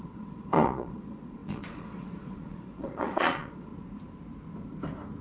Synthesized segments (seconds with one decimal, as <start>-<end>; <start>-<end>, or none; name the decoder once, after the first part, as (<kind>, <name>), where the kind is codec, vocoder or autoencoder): 0.0-3.7 (vocoder, Vocos)